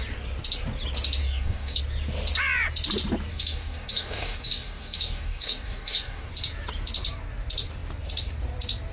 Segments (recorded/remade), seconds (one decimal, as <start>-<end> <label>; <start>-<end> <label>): 0.0-1.2 recorded; 1.2-1.8 remade; 1.8-3.3 recorded; 3.3-6.3 remade; 6.3-8.9 recorded